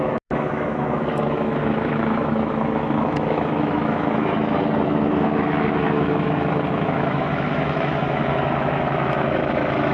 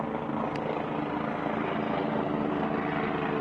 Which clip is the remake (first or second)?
first